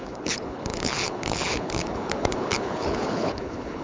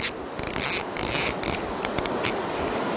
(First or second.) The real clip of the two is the second